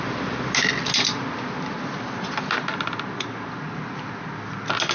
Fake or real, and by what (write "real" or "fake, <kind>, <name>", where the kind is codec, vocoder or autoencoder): real